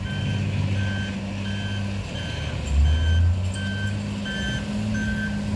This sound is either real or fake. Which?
real